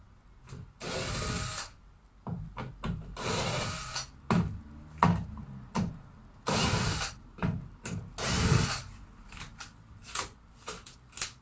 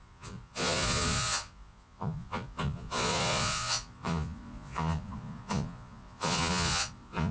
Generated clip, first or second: second